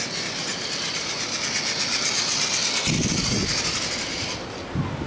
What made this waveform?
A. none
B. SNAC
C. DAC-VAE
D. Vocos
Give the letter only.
A